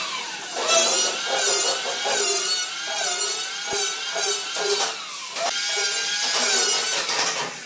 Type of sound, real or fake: real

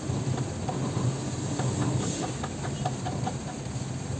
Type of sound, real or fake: real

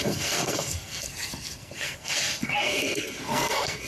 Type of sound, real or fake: fake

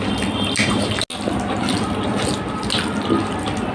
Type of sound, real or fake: real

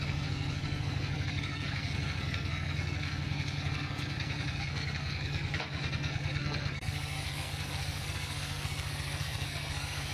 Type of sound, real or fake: fake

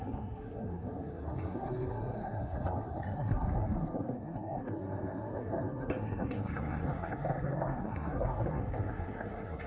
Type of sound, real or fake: fake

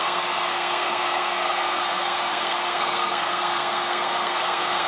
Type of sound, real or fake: fake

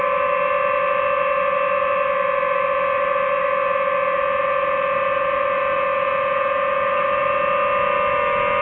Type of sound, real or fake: real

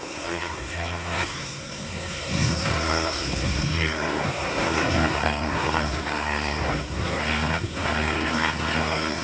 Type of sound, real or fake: fake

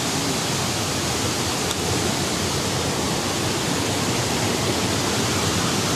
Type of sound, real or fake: real